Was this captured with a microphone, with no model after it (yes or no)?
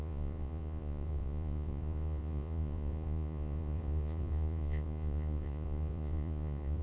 no